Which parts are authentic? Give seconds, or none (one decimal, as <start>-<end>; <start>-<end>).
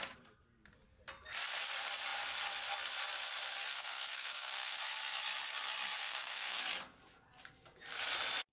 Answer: 0.0-3.7; 4.8-6.0; 6.6-8.5